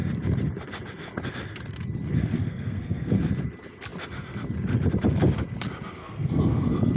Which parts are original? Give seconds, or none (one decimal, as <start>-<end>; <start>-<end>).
0.0-2.2; 3.2-6.0; 6.6-7.0